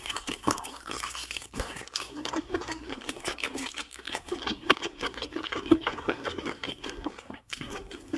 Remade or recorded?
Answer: remade